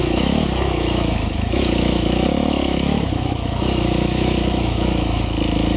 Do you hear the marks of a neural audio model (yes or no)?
yes